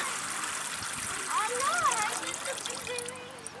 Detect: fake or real real